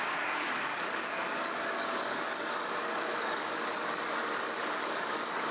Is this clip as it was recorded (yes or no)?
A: no